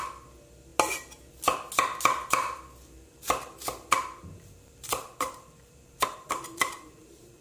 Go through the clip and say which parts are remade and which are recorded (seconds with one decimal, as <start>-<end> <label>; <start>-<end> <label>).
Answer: 0.0-2.8 recorded; 2.8-7.4 remade